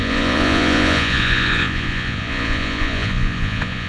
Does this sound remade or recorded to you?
remade